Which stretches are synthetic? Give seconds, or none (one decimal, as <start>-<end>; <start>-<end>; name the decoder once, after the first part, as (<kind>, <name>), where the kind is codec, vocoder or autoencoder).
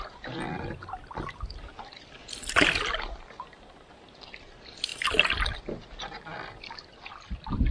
none